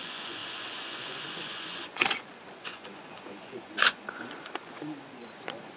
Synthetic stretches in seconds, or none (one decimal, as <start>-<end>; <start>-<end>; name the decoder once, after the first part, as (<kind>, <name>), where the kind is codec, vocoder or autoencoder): 0.0-5.8 (vocoder, Vocos)

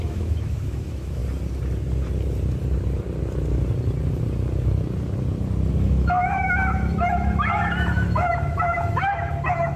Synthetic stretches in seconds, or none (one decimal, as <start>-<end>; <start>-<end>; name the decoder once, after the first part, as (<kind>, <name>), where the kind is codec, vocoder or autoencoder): 0.0-1.2 (autoencoder, DAC-VAE); 5.7-9.8

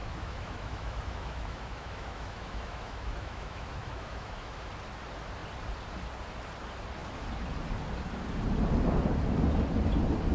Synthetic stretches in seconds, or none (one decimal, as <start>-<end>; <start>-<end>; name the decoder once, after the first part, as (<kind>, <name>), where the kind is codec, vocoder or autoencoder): 0.0-4.7 (autoencoder, DAC-VAE)

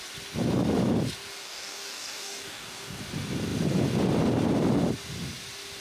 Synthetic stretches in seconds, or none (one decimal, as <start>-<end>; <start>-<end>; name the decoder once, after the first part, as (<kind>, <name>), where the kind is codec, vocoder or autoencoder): 1.4-3.0 (codec, DAC)

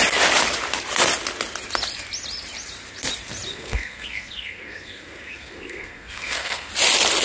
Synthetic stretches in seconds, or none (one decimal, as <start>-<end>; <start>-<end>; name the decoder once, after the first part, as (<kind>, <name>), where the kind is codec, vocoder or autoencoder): 3.5-6.7 (codec, SNAC)

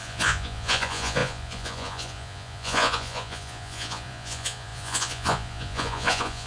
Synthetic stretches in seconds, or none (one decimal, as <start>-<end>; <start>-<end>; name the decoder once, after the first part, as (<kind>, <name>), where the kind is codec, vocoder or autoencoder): 0.0-6.5 (vocoder, Vocos)